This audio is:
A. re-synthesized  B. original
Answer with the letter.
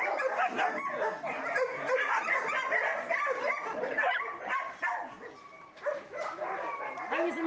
B